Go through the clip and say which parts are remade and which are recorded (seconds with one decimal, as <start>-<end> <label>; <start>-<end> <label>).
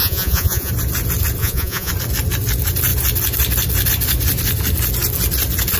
0.0-0.7 remade; 0.7-1.4 recorded; 1.4-1.9 remade; 1.9-5.8 recorded